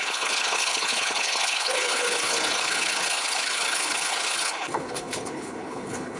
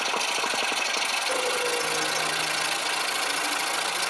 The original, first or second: second